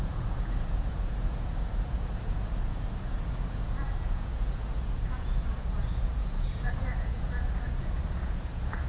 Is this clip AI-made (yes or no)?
yes